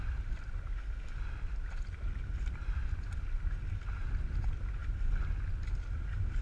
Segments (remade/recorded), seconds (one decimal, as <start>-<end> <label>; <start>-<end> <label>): 0.0-6.4 recorded